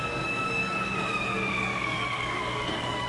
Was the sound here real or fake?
fake